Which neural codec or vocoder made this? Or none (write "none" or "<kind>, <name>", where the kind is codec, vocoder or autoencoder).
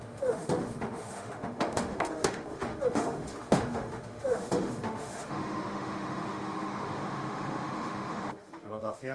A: autoencoder, DAC-VAE